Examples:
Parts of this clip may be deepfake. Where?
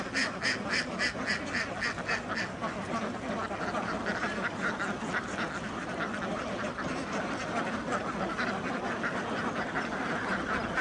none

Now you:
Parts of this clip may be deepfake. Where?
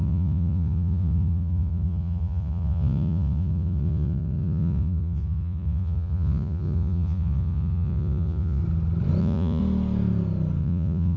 0.0-8.6 (vocoder, Vocos); 9.2-9.6; 10.6-11.2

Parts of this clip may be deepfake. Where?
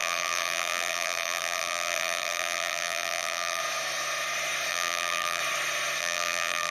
0.0-3.6 (vocoder, BigVGAN v2); 4.7-5.4; 6.0-6.7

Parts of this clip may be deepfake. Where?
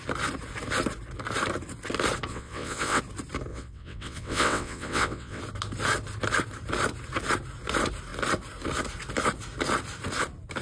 2.3-3.0 (vocoder, WaveNeXt); 3.5-5.4